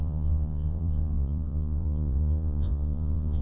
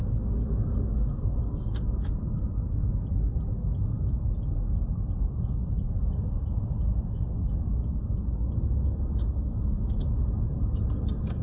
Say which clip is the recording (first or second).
second